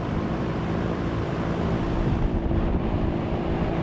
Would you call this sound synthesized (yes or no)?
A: yes